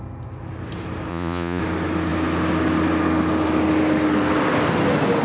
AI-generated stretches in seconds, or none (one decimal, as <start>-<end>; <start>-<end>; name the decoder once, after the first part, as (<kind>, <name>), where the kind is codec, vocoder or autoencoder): 1.1-1.6 (vocoder, Vocos)